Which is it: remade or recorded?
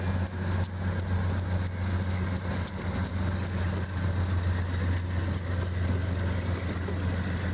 recorded